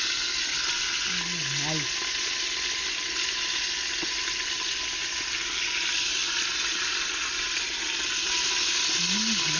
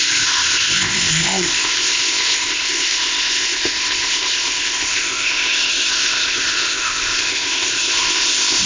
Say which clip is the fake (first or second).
second